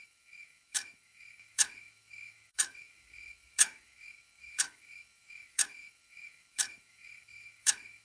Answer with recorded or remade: remade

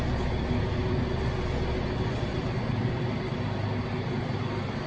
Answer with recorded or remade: recorded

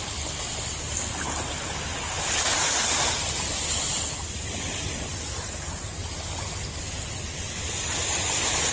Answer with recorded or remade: recorded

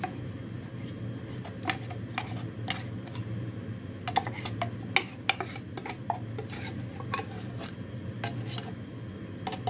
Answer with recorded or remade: recorded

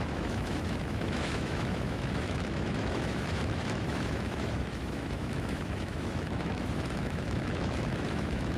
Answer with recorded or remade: remade